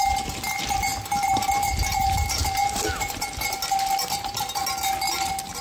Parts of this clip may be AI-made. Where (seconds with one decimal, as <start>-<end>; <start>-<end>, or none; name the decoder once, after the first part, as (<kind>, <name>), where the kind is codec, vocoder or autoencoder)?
none